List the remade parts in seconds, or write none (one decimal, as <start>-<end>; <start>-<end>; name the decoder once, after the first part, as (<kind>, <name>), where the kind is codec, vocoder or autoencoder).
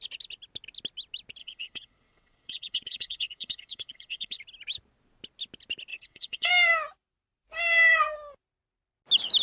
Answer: 1.4-4.4 (vocoder, WaveNeXt); 5.9-6.5